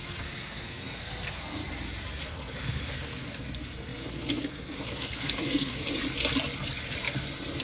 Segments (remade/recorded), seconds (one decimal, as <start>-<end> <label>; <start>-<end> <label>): 0.0-1.6 remade; 1.6-2.2 recorded; 2.2-5.8 remade; 5.8-7.6 recorded